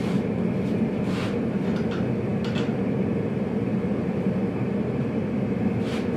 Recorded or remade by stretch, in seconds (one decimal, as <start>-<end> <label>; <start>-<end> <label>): 0.0-6.2 recorded

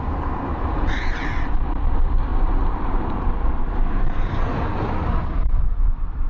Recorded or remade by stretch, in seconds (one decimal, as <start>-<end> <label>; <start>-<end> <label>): 0.0-2.3 remade; 2.3-3.1 recorded; 3.1-6.3 remade

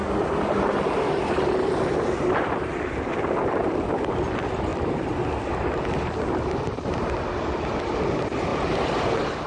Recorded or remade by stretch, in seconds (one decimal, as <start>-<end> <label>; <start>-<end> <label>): 0.0-4.7 recorded; 4.7-5.8 remade; 5.8-8.5 recorded; 8.5-9.0 remade; 9.0-9.5 recorded

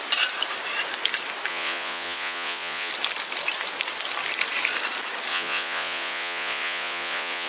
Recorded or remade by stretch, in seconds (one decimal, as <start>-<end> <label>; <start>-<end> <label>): 0.0-1.5 recorded; 1.5-2.9 remade; 2.9-5.3 recorded; 5.3-7.5 remade